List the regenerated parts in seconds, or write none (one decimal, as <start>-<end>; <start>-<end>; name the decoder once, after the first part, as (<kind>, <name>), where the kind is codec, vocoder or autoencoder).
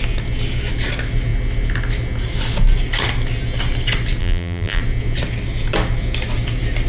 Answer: 4.2-4.8 (vocoder, BigVGAN v2)